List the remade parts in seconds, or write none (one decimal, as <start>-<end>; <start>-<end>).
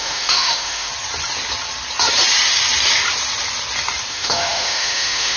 0.0-0.9; 4.1-5.4